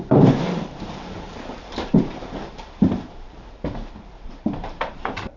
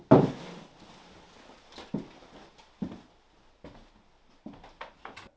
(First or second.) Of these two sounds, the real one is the second